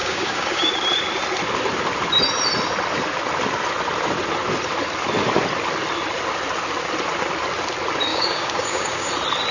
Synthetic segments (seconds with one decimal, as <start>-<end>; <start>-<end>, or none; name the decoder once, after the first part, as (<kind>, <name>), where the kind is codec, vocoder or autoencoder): 0.0-0.7 (codec, DAC); 8.1-9.1